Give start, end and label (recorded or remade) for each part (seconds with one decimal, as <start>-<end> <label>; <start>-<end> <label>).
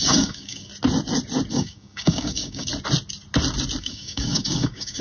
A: 0.0-0.7 remade; 0.7-1.5 recorded; 1.5-2.7 remade; 2.7-3.8 recorded; 3.8-5.0 remade